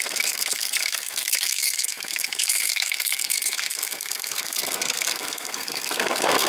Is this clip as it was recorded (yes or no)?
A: no